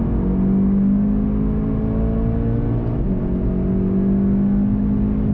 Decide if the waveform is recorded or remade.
recorded